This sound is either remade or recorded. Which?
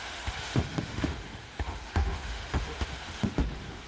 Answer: remade